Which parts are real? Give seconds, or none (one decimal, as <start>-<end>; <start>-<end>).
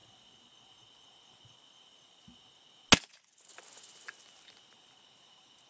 0.0-5.7